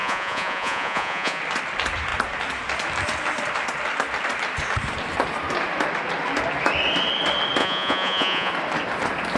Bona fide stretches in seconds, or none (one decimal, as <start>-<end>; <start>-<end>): 1.4-7.6; 8.5-9.4